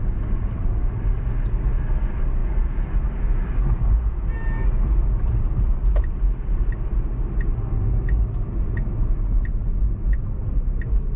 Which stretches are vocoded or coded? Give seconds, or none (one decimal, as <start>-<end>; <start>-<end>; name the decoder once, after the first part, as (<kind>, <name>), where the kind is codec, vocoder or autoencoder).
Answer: none